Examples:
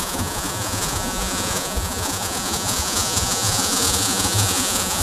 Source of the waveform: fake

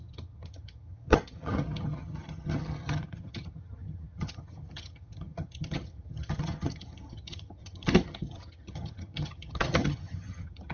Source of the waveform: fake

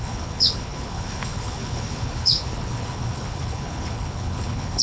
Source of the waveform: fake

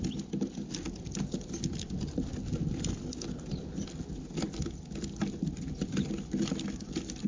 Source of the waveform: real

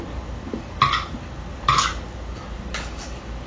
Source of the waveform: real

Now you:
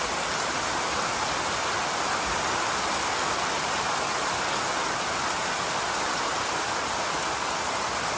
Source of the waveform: real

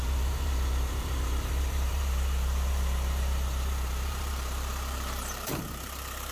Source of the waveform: fake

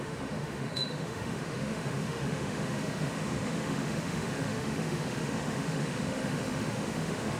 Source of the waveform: fake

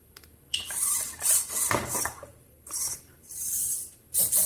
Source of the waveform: fake